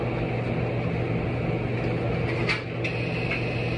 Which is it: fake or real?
real